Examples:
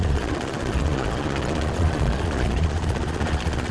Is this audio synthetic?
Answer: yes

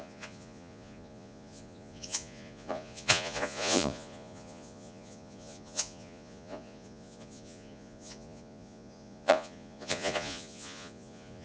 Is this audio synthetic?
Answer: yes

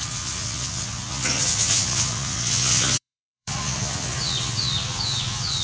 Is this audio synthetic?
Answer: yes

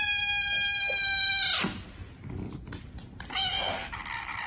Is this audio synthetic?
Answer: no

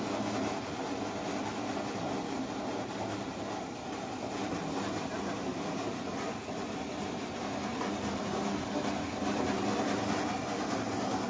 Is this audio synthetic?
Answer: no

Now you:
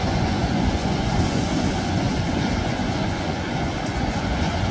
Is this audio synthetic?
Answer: yes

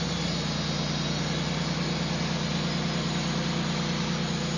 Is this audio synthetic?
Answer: no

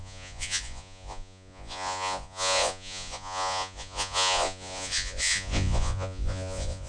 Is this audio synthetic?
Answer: yes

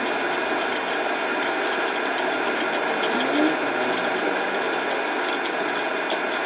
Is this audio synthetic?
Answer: no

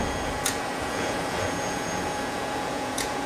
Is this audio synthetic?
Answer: yes